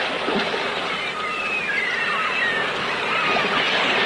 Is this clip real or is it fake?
real